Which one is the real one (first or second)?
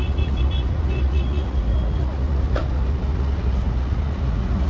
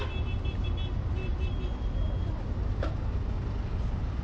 second